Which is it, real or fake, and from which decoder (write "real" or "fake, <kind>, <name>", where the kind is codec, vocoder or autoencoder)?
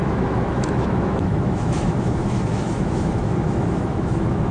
fake, autoencoder, DAC-VAE